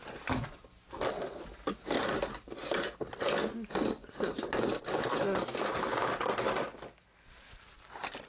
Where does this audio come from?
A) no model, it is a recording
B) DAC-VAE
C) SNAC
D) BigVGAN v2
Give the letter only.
A